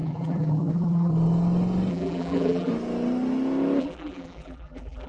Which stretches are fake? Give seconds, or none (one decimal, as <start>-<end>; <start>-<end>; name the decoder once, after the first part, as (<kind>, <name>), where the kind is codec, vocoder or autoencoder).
0.0-1.1 (vocoder, BigVGAN v2); 1.9-2.7; 3.8-5.1